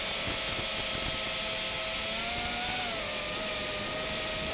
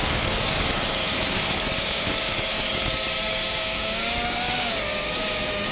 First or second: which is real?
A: first